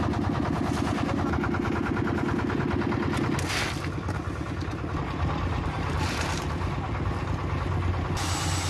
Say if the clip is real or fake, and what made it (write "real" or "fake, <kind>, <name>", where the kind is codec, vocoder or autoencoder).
real